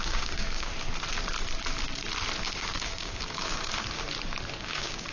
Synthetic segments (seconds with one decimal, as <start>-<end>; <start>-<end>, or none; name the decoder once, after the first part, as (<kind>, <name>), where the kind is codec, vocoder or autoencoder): 0.0-0.7 (codec, DAC); 2.4-3.7; 4.6-5.1